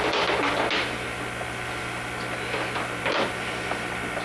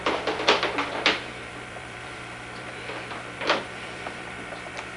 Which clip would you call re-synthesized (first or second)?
second